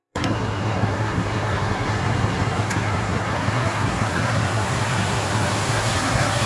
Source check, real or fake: fake